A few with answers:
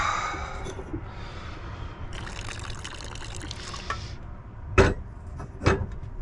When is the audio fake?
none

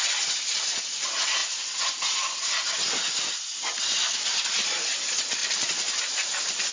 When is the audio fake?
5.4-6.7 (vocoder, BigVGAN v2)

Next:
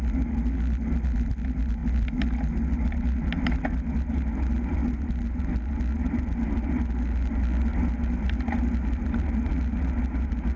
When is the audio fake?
none

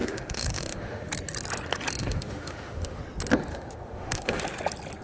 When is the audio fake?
0.0-1.1 (autoencoder, DAC-VAE); 2.0-3.0; 3.5-4.4

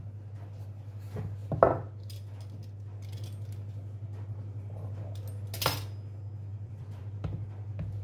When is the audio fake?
6.5-7.0 (vocoder, BigVGAN v2)